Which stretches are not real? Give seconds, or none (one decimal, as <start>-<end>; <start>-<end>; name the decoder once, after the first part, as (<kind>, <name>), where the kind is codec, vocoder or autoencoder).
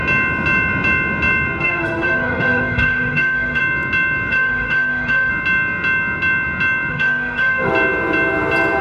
1.6-3.6 (autoencoder, DAC-VAE); 4.3-5.3; 6.9-7.7